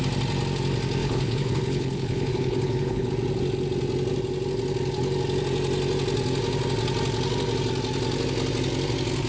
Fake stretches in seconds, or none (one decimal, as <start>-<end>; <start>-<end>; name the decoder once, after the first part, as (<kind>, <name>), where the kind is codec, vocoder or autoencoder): 1.0-3.1 (codec, HILCodec)